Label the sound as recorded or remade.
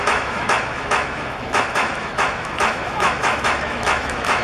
remade